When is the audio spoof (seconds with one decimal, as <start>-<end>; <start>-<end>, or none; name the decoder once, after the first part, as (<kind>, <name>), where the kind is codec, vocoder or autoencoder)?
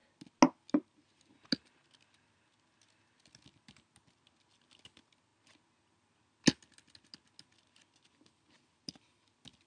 none